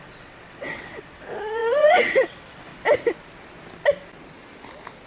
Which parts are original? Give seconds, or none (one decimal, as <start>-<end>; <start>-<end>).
2.7-5.1